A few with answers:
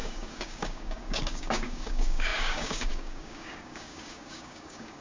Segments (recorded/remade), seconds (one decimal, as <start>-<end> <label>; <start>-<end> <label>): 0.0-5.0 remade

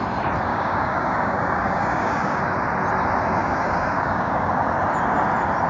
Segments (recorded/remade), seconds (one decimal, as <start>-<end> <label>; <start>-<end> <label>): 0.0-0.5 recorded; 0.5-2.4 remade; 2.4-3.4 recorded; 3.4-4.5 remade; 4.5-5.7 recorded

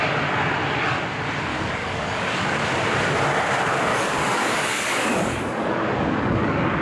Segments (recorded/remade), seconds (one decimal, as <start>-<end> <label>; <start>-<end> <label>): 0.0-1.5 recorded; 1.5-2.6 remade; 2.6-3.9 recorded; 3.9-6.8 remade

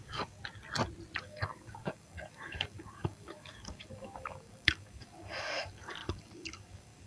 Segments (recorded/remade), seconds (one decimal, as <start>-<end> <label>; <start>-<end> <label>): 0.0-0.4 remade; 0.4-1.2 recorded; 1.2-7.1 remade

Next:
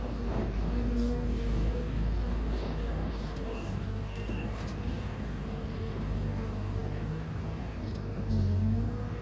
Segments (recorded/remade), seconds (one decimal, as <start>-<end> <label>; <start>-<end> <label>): 0.0-9.2 remade

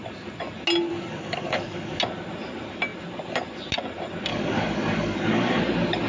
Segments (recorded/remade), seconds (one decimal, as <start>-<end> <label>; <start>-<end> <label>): 0.0-0.9 recorded; 0.9-2.0 remade; 2.0-4.3 recorded; 4.3-5.6 remade; 5.6-6.1 recorded